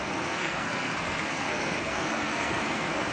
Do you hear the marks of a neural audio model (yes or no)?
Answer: yes